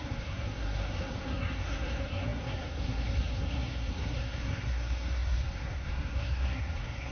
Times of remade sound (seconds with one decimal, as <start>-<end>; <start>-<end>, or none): 0.0-7.1